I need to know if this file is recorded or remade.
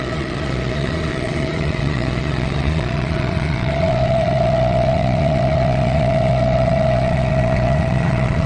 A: remade